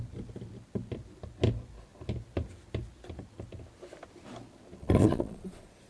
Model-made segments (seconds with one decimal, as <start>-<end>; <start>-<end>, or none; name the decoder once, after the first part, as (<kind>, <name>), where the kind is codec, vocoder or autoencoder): 4.8-5.9 (vocoder, Vocos)